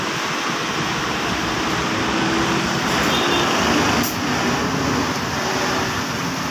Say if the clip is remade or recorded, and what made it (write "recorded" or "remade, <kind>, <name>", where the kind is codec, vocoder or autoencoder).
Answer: recorded